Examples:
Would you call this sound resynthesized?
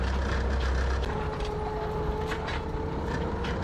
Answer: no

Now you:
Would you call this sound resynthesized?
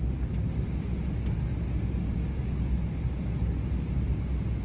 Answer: no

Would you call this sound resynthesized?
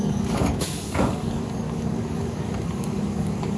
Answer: yes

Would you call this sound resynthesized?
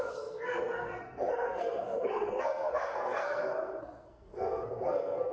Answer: yes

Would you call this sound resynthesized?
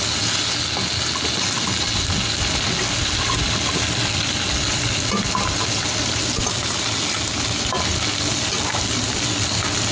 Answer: no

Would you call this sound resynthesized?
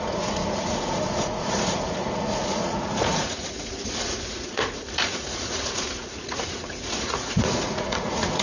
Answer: yes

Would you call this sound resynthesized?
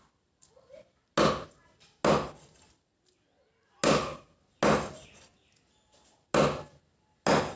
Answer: no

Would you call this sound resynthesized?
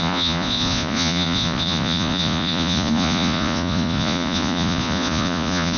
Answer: yes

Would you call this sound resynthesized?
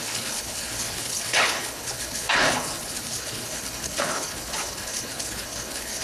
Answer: yes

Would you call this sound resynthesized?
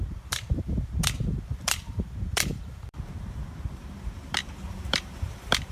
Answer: yes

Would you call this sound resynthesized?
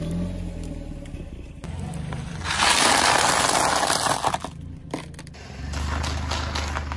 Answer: no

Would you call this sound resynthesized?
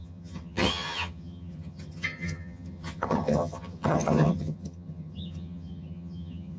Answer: yes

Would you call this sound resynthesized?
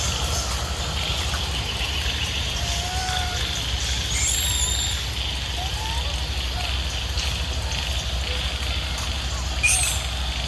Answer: no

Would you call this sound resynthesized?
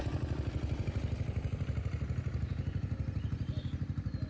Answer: no